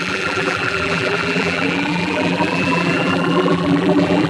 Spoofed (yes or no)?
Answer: yes